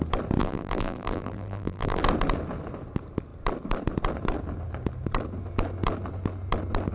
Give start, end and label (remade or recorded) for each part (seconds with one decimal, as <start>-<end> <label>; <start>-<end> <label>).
0.0-0.4 recorded; 0.4-2.0 remade; 2.0-6.9 recorded